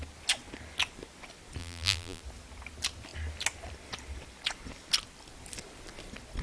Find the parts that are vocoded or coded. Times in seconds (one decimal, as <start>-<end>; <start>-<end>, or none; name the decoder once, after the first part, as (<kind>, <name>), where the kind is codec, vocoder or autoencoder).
1.6-2.2 (vocoder, BigVGAN v2)